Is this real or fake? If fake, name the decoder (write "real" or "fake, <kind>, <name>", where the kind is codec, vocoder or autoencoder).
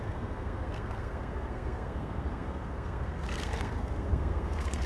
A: fake, codec, SNAC